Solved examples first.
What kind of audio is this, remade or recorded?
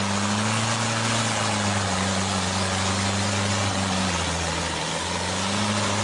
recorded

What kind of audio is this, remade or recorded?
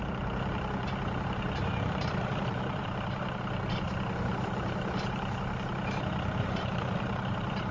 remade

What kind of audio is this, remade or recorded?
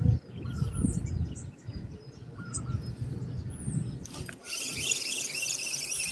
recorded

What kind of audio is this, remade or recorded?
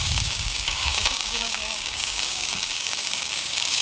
remade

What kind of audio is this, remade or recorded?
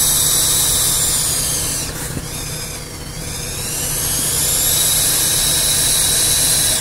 recorded